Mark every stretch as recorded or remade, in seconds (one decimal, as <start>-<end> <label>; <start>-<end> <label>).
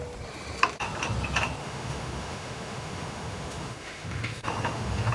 0.0-1.6 recorded; 1.6-5.1 remade